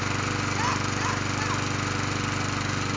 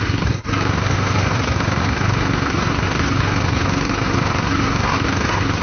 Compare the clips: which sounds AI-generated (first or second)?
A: second